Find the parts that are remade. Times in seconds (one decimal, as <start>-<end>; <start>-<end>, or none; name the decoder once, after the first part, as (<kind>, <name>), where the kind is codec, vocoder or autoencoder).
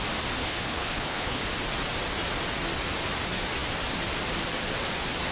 0.4-1.4 (codec, HILCodec)